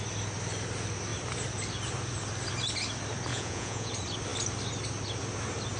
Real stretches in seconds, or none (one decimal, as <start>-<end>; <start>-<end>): 0.0-3.3; 3.9-5.8